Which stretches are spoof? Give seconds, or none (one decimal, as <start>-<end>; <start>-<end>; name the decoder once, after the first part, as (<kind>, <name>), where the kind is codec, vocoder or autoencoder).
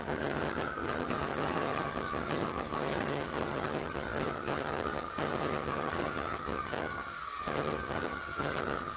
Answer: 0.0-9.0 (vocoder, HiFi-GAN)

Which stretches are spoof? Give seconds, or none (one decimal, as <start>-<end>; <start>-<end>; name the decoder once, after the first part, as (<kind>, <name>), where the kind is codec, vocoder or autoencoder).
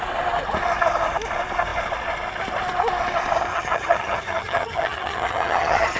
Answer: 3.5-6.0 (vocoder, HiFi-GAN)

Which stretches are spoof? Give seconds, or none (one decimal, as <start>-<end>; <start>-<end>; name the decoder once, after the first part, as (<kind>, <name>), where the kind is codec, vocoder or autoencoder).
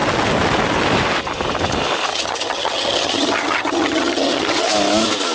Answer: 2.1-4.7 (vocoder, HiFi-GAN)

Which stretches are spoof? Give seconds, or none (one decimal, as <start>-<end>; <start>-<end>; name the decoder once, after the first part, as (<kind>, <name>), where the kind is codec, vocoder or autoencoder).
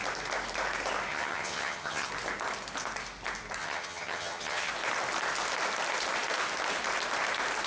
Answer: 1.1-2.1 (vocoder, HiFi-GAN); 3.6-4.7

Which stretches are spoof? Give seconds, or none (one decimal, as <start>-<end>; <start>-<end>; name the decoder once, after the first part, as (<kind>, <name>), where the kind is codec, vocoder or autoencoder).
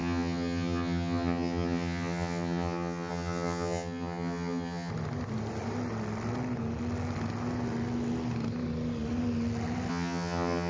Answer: 0.0-4.9 (vocoder, HiFi-GAN); 9.9-10.7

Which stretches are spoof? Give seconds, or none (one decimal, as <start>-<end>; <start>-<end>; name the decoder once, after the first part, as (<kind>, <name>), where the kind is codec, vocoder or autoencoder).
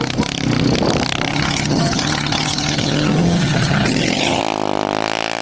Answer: 1.3-4.4 (vocoder, HiFi-GAN)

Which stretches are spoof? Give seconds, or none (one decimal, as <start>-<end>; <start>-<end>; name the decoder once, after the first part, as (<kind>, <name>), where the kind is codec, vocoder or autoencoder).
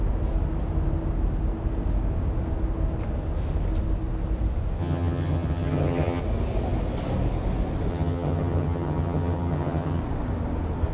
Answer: 4.8-6.2 (vocoder, HiFi-GAN); 7.9-10.0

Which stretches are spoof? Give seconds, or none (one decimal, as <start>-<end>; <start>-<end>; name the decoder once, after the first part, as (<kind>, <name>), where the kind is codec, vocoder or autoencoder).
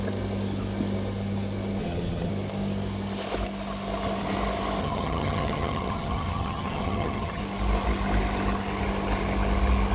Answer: 1.8-2.3 (vocoder, HiFi-GAN); 4.8-7.4